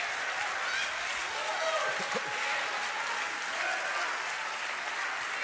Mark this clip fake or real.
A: real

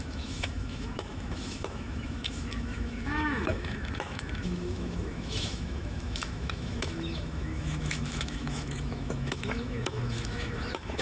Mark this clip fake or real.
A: fake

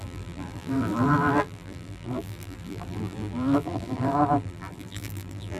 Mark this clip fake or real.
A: fake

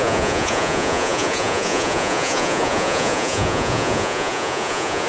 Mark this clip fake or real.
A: fake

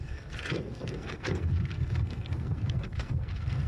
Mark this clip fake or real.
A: fake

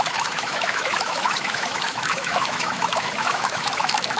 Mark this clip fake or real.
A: fake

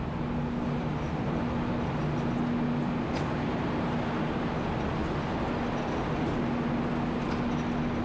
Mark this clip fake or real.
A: real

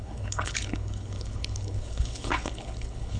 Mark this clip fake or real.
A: fake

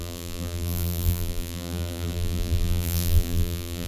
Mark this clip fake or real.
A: fake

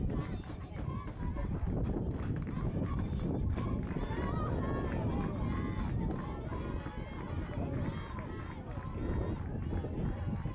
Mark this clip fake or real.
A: real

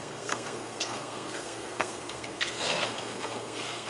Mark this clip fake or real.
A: fake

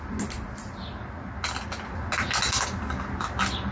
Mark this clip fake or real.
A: real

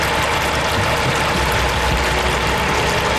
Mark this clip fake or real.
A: real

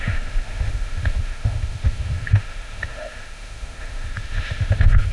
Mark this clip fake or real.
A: fake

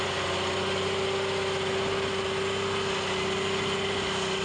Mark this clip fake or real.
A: real